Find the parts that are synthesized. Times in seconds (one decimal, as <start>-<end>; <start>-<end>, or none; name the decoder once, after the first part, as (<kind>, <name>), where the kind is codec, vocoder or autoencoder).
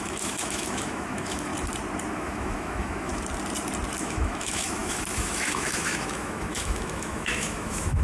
0.0-1.5 (autoencoder, DAC-VAE); 2.1-3.1; 4.0-8.0